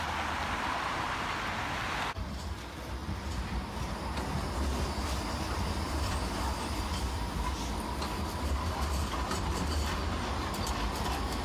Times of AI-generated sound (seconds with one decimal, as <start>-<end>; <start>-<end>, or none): none